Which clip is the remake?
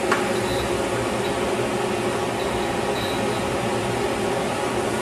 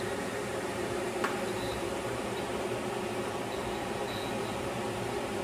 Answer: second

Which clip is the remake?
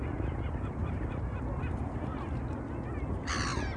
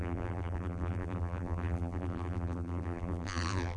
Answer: second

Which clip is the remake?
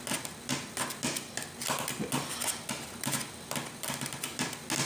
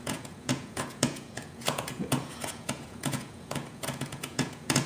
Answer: second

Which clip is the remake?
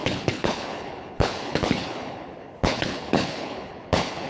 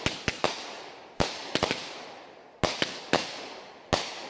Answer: first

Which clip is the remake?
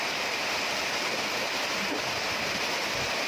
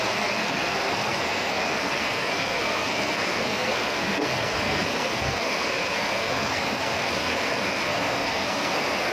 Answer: second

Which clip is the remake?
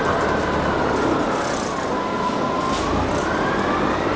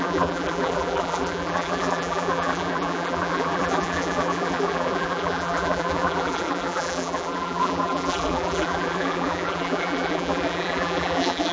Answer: second